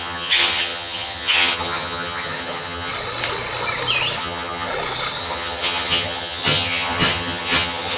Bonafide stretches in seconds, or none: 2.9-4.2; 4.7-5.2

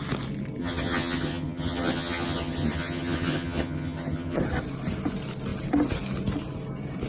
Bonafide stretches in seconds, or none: 0.0-0.6; 4.4-7.1